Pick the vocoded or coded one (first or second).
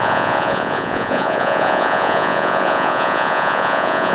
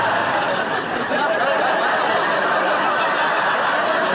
first